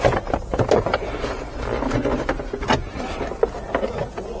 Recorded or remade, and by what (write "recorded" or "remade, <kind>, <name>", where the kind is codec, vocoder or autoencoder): recorded